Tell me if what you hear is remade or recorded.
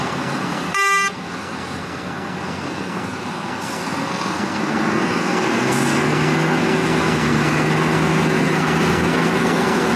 remade